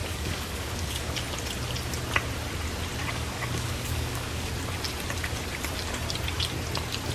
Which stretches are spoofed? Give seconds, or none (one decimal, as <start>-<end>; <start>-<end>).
0.0-1.1; 3.0-4.5